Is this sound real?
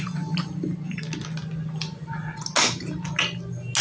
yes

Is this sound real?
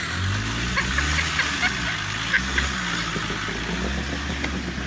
yes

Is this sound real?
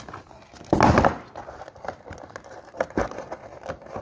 yes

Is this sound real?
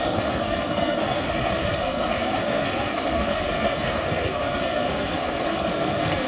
no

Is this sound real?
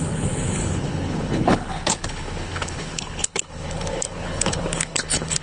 no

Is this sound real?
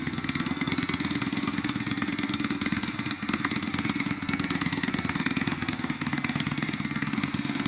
no